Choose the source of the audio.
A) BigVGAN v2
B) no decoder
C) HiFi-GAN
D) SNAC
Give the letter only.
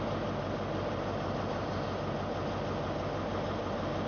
B